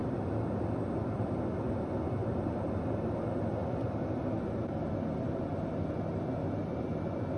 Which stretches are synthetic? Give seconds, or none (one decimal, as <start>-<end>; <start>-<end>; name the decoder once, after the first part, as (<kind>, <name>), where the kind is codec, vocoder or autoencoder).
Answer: 2.2-2.7 (vocoder, BigVGAN v2); 3.6-4.2